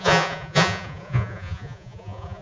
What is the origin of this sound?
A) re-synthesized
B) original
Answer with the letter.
A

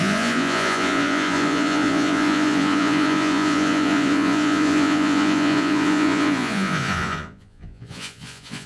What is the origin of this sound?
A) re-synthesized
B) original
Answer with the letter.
A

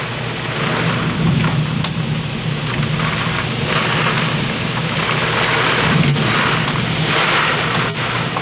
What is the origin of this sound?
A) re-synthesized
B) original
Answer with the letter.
B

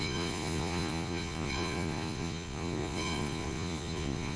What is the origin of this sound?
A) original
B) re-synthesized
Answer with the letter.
B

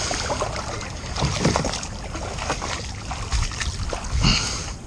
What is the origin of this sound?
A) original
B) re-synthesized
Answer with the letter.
A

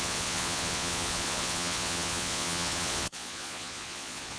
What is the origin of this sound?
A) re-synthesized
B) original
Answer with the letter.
A